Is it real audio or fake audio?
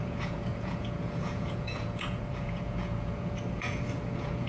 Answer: fake